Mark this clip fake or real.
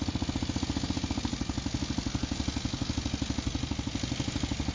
real